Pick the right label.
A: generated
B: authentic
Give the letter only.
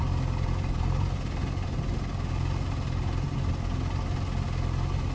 B